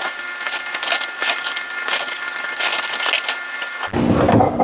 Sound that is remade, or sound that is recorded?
recorded